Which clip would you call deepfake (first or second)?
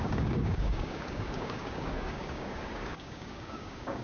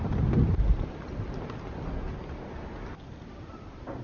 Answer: first